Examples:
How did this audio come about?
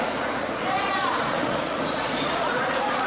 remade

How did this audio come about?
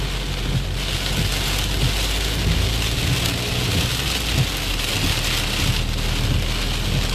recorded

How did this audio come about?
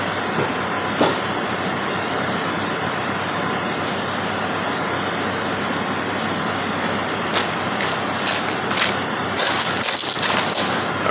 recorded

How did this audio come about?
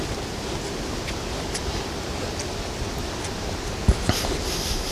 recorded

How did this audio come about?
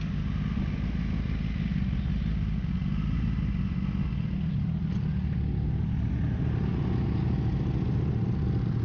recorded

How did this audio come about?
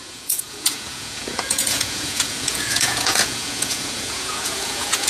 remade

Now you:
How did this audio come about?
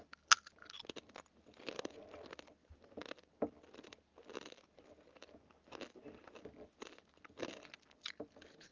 recorded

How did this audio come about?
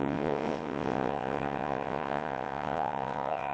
remade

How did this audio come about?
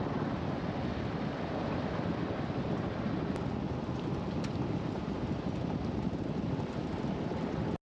recorded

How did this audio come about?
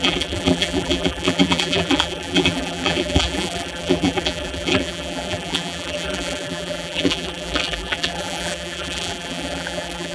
remade